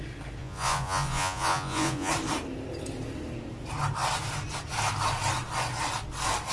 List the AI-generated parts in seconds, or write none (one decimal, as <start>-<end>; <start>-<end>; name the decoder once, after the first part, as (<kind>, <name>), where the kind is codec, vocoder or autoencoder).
0.4-2.1 (vocoder, Vocos)